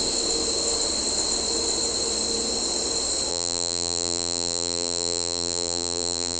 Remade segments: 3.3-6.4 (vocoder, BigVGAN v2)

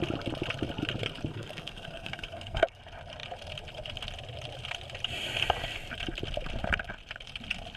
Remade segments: 1.3-2.8 (codec, SNAC)

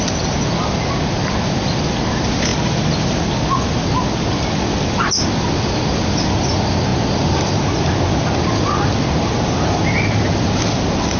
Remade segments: none

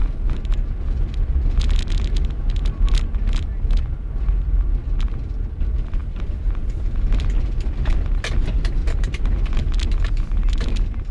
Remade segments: 6.0-6.9 (vocoder, BigVGAN v2); 8.8-9.4

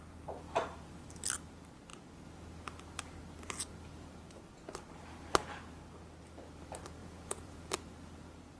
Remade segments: 7.0-7.6 (vocoder, Vocos)

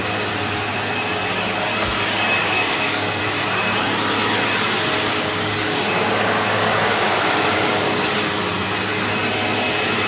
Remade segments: 2.4-3.2 (codec, DAC); 5.1-8.3

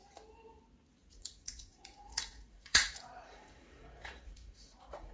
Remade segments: 1.1-5.1 (vocoder, Vocos)

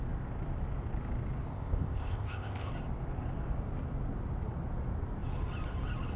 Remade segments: 1.5-2.7 (codec, ZipCodec)